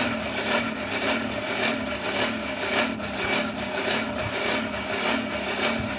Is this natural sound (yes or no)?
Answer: yes